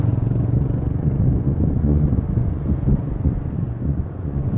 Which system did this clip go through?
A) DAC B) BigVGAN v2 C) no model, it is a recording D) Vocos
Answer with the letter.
D